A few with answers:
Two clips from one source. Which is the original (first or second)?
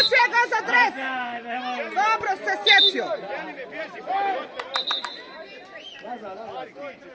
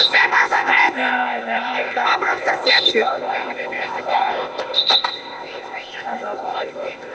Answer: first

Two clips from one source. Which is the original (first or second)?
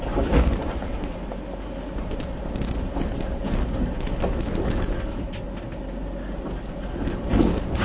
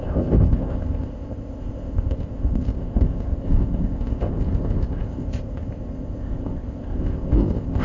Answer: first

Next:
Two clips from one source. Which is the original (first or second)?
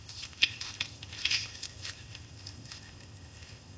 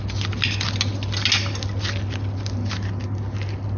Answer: second